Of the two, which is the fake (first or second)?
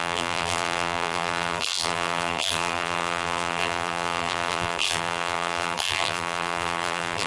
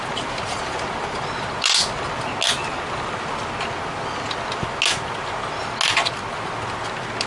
first